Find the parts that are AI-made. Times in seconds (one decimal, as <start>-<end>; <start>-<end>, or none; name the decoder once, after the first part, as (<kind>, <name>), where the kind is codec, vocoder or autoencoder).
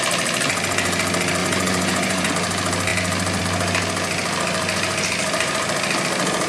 1.4-2.3 (vocoder, Vocos)